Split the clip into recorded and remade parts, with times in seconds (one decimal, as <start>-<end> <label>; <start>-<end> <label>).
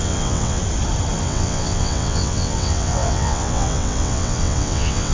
0.0-0.6 remade; 0.6-1.2 recorded; 1.2-5.1 remade